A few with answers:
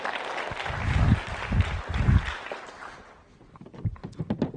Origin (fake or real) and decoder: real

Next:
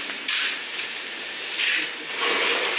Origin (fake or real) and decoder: fake, vocoder, BigVGAN v2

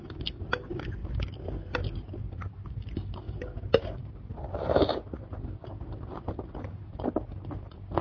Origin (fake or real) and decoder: real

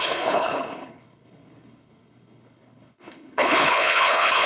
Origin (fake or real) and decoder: fake, codec, HILCodec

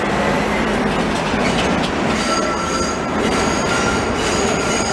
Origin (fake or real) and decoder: real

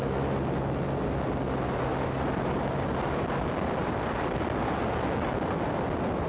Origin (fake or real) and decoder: real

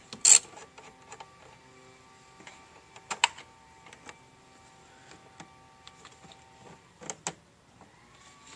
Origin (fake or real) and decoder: real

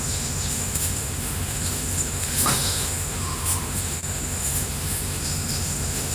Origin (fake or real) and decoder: fake, autoencoder, DAC-VAE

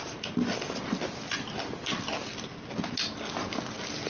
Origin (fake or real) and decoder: real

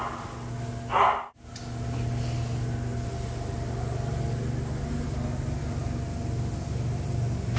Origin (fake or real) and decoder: real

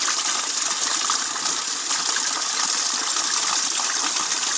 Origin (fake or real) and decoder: real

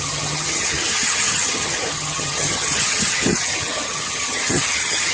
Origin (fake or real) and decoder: fake, vocoder, HiFi-GAN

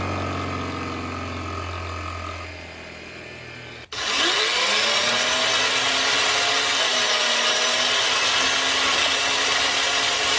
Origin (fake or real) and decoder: real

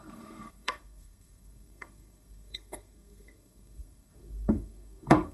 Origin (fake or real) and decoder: fake, codec, SNAC